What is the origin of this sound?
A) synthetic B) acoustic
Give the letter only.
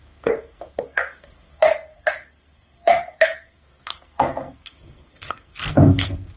A